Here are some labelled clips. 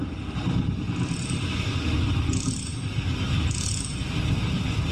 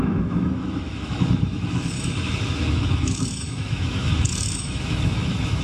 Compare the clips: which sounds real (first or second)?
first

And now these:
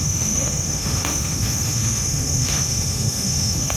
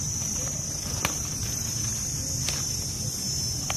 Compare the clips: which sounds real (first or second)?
second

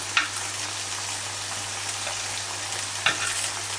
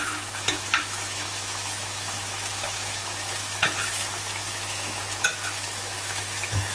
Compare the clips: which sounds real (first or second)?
first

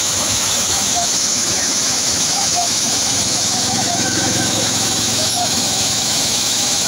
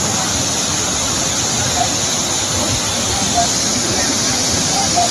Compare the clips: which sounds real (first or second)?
second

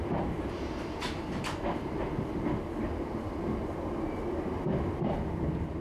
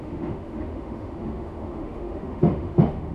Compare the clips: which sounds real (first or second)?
first